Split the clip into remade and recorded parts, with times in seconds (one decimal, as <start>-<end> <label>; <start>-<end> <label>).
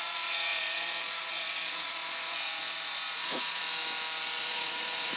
0.0-3.6 remade; 3.6-4.4 recorded; 4.4-5.2 remade